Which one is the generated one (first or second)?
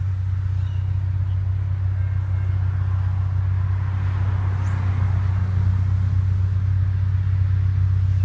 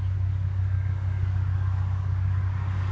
second